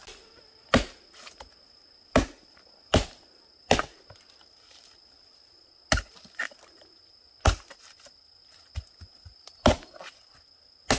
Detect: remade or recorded recorded